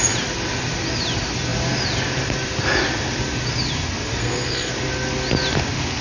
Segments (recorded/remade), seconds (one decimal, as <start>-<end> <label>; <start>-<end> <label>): 0.0-4.2 recorded; 4.2-4.7 remade; 4.7-6.0 recorded